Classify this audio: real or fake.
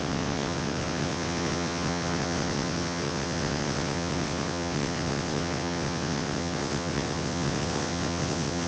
fake